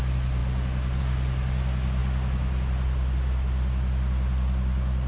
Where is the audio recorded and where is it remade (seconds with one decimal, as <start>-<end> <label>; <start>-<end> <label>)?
0.0-5.1 recorded